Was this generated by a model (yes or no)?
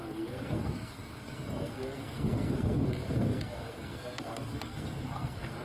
yes